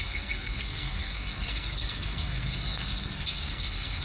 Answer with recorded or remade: remade